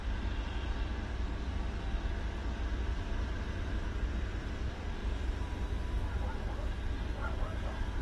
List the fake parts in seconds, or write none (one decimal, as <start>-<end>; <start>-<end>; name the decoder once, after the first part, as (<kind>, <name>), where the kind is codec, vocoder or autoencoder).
3.6-8.0 (vocoder, BigVGAN v2)

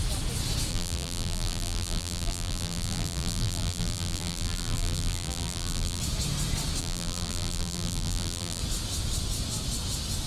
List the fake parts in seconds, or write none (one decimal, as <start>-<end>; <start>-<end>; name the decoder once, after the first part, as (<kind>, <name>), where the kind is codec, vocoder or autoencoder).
0.7-6.0 (vocoder, BigVGAN v2); 6.8-8.6

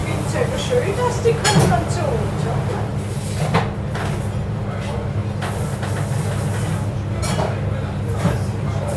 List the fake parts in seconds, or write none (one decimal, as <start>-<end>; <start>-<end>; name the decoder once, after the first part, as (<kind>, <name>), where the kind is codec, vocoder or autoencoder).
2.4-2.9 (vocoder, BigVGAN v2); 4.5-5.2; 8.1-9.0

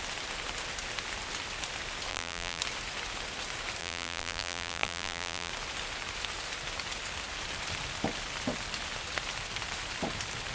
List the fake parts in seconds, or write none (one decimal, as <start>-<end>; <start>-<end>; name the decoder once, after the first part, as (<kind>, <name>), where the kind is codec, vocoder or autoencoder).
2.1-2.6 (vocoder, BigVGAN v2); 3.8-5.5

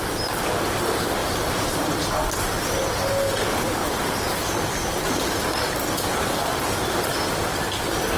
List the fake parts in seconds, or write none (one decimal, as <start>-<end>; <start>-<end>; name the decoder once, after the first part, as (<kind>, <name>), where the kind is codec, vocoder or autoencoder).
1.2-1.8 (vocoder, BigVGAN v2); 3.8-7.3

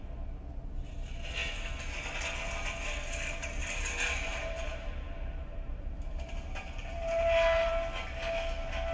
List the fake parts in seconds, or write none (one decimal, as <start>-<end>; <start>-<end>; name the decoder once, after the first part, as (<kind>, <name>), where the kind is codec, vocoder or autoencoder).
3.6-7.7 (vocoder, BigVGAN v2)

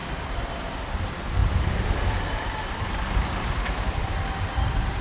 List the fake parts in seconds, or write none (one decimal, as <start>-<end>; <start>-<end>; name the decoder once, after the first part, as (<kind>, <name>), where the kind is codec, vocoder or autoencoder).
1.4-3.7 (vocoder, BigVGAN v2)

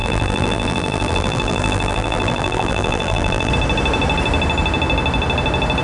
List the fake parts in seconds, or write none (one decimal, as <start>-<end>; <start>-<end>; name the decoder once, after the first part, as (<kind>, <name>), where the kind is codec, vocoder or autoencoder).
0.0-3.5 (vocoder, BigVGAN v2)